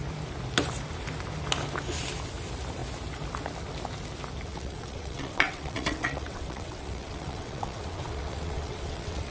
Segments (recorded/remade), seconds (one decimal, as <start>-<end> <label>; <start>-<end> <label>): 0.0-4.5 recorded; 4.5-9.3 remade